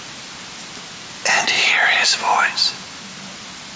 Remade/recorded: recorded